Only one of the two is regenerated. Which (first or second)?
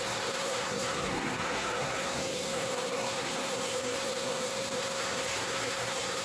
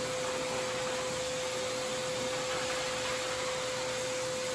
first